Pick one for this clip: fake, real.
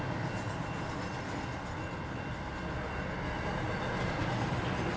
real